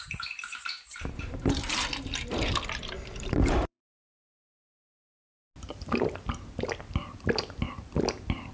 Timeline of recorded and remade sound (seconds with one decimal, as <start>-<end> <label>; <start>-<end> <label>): 0.0-3.8 remade; 3.8-8.5 recorded